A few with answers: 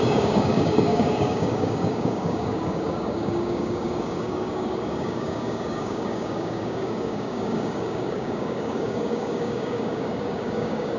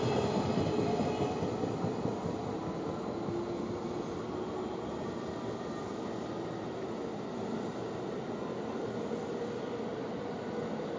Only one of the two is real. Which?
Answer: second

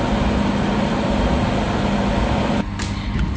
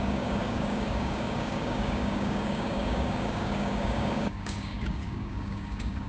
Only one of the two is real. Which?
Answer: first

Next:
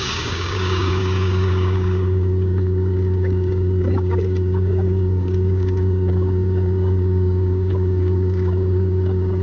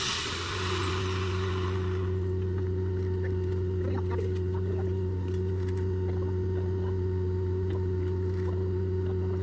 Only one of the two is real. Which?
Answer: second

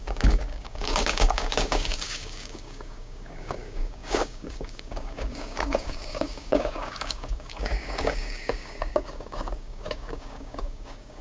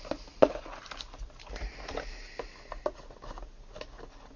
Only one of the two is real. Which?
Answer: second